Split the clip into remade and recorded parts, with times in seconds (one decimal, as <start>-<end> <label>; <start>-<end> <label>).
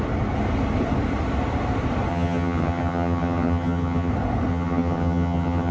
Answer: 0.0-2.1 recorded; 2.1-4.1 remade; 4.1-4.5 recorded; 4.5-5.7 remade